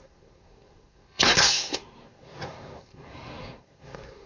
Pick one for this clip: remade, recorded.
remade